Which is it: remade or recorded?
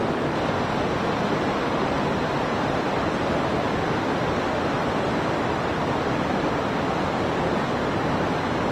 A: recorded